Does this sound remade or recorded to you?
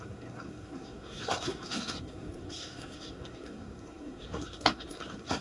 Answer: remade